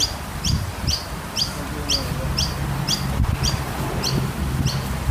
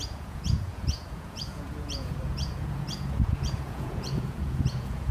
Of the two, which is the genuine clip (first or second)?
first